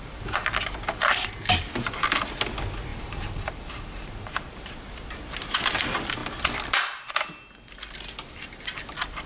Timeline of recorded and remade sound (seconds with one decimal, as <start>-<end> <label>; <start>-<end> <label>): 0.0-2.9 recorded; 2.9-4.7 remade; 4.7-9.3 recorded